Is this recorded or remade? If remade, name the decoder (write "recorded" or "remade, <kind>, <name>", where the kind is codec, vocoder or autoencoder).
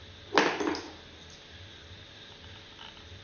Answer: recorded